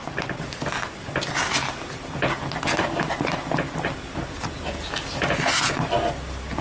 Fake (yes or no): no